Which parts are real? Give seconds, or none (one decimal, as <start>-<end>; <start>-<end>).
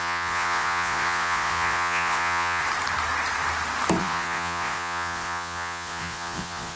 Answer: 2.6-4.0